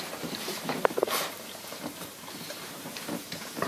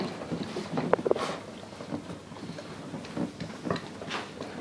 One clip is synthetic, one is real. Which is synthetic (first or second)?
first